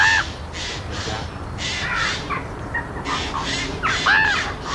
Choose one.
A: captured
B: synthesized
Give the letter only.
A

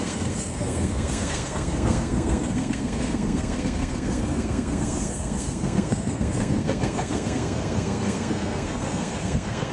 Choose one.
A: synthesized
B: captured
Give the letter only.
A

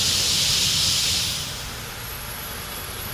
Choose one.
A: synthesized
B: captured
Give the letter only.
B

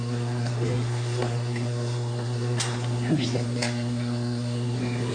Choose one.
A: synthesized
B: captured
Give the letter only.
A